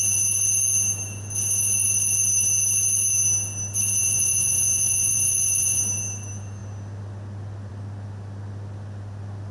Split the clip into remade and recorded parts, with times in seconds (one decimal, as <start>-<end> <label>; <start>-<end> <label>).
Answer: 0.0-4.0 recorded; 4.0-5.8 remade; 5.8-9.5 recorded